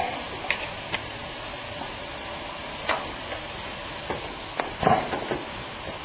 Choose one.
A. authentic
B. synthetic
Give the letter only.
A